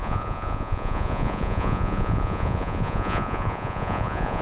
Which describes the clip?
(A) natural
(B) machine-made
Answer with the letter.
B